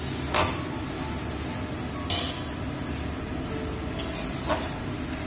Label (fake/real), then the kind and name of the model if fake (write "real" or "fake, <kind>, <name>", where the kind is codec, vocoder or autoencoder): real